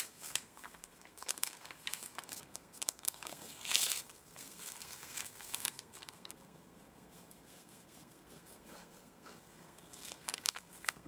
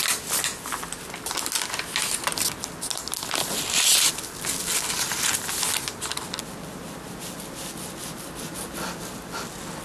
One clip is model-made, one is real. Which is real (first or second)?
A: second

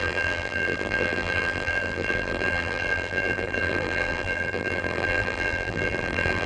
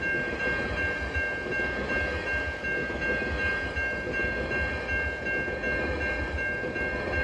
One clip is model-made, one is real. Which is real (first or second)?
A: second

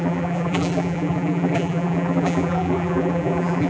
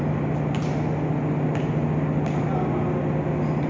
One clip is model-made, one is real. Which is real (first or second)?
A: second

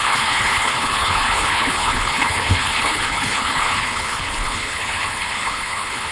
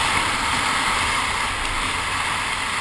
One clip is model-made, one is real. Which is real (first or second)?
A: second